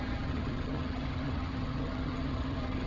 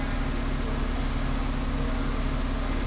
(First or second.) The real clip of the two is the second